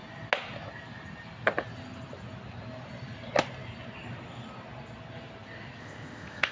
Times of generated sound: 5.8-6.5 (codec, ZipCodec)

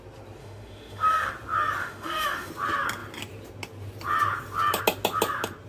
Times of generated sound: 0.4-1.3 (autoencoder, DAC-VAE); 1.8-2.5

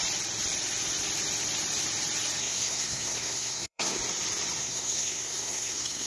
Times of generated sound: 2.4-4.0 (codec, SNAC); 4.6-6.1

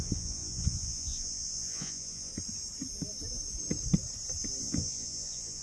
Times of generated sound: 0.0-2.3 (vocoder, Vocos); 4.6-5.6

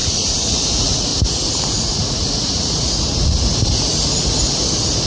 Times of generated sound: 0.0-1.1 (vocoder, Vocos); 1.7-3.5

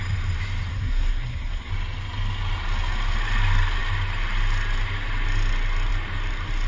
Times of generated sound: 0.7-1.7 (codec, SNAC)

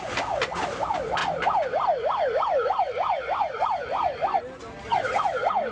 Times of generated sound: none

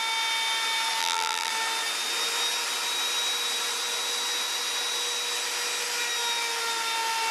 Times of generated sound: 1.0-1.5 (vocoder, BigVGAN v2)